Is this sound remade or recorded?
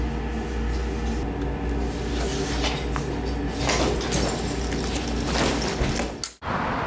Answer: recorded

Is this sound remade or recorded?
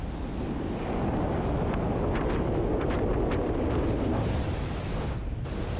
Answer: recorded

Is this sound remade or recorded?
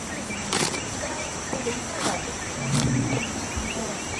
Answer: remade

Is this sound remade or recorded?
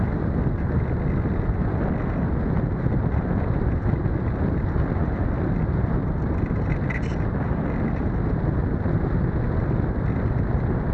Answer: recorded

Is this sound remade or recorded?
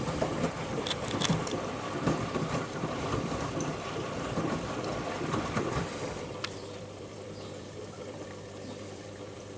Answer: remade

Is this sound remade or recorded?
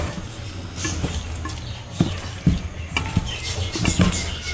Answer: recorded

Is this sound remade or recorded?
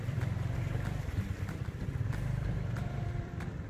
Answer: remade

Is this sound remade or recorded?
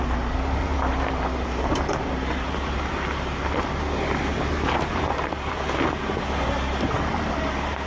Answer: remade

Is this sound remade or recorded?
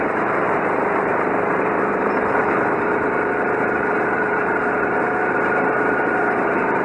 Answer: remade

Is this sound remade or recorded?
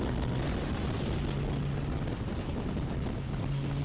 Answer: recorded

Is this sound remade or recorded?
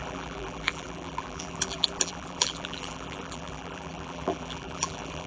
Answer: remade